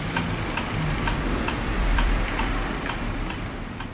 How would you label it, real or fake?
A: fake